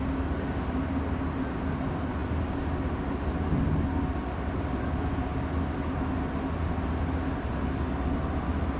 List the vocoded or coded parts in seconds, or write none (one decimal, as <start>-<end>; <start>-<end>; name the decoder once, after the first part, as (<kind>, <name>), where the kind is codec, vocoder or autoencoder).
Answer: none